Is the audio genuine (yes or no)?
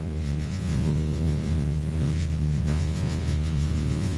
no